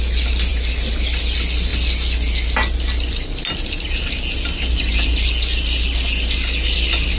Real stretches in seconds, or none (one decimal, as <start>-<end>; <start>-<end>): 0.0-7.2